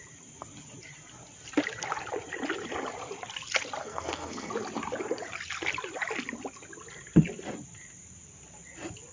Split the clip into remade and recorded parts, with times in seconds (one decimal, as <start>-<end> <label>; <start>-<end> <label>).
0.0-3.8 recorded; 3.8-4.5 remade; 4.5-9.1 recorded